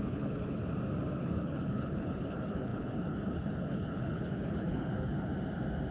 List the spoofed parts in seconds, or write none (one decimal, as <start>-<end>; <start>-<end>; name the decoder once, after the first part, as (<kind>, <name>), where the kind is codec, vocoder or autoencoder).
0.0-0.6 (codec, HILCodec); 1.2-5.3